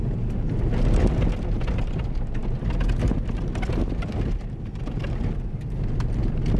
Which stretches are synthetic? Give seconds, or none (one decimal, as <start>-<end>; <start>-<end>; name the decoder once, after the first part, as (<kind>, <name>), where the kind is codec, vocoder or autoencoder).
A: none